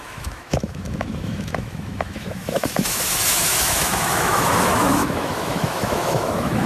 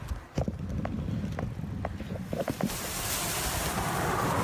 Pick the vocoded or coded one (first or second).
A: first